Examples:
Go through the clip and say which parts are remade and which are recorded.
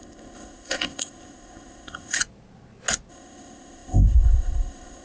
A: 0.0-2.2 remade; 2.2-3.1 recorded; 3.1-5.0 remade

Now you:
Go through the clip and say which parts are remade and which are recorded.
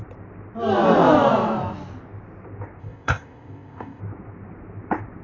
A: 0.0-2.8 recorded; 2.8-4.0 remade; 4.0-5.2 recorded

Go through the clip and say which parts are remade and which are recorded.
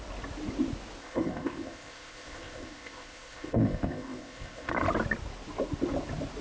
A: 0.0-1.0 recorded; 1.0-4.7 remade; 4.7-6.4 recorded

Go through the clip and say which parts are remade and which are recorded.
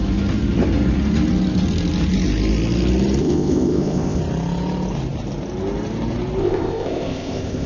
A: 0.0-3.2 recorded; 3.2-4.2 remade; 4.2-6.4 recorded; 6.4-7.7 remade